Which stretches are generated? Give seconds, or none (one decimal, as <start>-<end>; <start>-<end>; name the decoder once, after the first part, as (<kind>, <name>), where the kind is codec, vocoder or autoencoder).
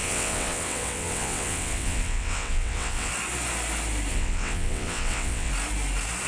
0.0-3.1 (vocoder, WaveNeXt); 4.1-5.5